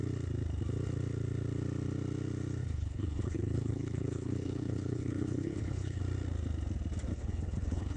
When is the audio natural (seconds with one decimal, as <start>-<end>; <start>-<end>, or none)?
0.0-2.6; 6.0-7.1